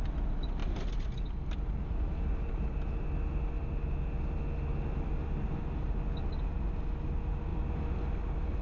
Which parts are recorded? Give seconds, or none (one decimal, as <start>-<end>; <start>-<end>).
0.0-8.6